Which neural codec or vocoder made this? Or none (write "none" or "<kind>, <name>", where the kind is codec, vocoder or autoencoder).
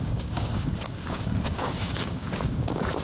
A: codec, DAC